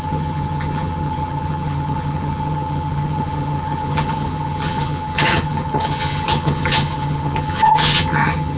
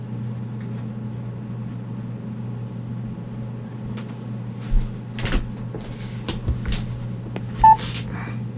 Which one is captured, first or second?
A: second